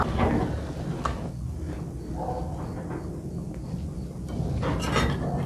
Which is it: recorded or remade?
recorded